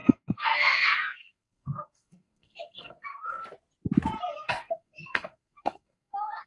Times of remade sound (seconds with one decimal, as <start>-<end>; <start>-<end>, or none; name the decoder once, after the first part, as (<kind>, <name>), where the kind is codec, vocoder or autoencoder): 0.0-3.4 (codec, SNAC); 4.3-6.5